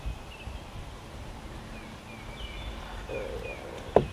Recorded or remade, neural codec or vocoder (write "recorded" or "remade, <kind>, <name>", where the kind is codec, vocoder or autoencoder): recorded